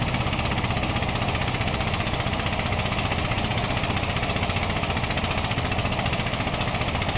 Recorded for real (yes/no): yes